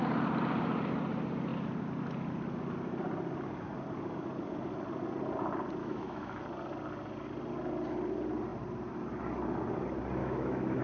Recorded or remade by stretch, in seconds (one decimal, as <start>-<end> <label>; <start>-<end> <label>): 0.0-5.8 recorded; 5.8-6.4 remade; 6.4-10.2 recorded; 10.2-10.8 remade